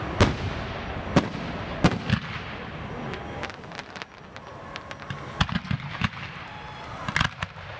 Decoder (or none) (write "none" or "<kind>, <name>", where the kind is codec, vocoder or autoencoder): none